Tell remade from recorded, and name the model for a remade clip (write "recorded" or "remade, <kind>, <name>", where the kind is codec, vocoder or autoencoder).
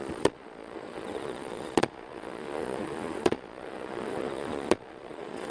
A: remade, vocoder, Vocos